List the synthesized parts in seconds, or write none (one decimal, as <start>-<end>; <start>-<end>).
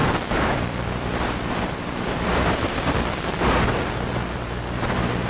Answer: 0.0-3.2